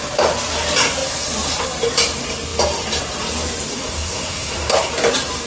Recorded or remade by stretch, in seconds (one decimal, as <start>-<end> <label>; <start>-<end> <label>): 0.0-3.7 recorded; 3.7-4.9 remade; 4.9-5.5 recorded